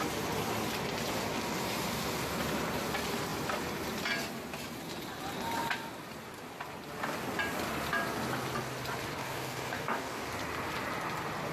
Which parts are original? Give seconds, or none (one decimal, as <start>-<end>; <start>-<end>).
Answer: 0.0-9.2; 10.3-11.5